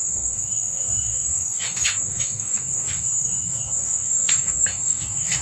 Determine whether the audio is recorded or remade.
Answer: remade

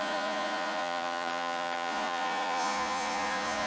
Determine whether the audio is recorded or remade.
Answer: remade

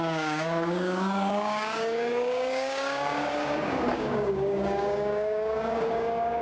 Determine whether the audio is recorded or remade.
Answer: remade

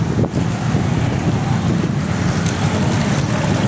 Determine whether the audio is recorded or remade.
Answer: recorded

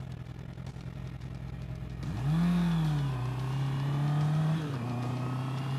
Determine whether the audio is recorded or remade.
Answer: recorded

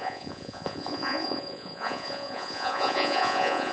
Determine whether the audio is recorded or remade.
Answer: remade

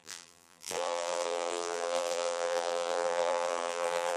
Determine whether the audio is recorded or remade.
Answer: remade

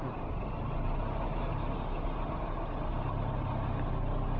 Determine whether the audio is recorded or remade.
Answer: recorded